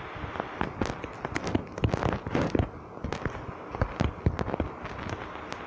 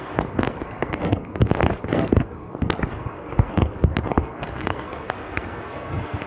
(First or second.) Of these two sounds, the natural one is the first